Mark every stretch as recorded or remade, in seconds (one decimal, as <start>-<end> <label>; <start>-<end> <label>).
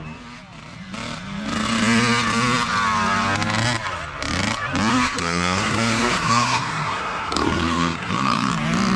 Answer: 0.0-4.9 recorded; 4.9-8.5 remade; 8.5-9.0 recorded